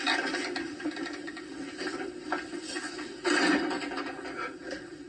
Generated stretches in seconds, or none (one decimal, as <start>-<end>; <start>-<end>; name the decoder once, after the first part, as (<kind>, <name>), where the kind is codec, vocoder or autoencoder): none